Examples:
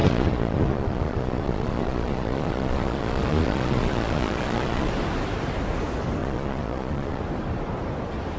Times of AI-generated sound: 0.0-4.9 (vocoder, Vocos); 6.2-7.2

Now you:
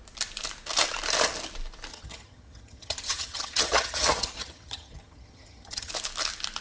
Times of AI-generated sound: 1.9-5.9 (vocoder, HiFi-GAN)

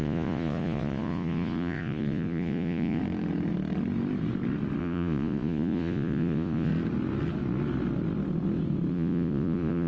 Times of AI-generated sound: 0.0-3.0 (vocoder, Vocos); 4.8-6.7; 8.9-9.9

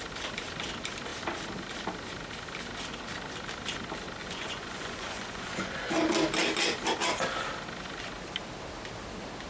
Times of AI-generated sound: 4.2-5.9 (vocoder, Vocos)

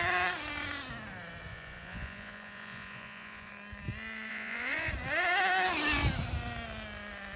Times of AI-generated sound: 1.5-3.5 (vocoder, Vocos); 4.3-4.9

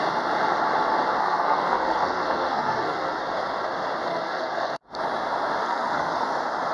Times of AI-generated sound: 1.2-3.1 (codec, SNAC); 4.1-4.8; 5.6-6.3

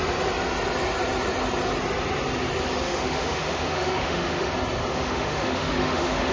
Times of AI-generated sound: 2.8-4.5 (autoencoder, DAC-VAE); 4.9-6.3